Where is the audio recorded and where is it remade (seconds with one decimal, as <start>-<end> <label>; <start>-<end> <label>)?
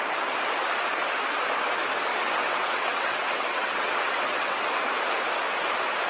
0.0-2.1 recorded; 2.1-4.6 remade; 4.6-6.1 recorded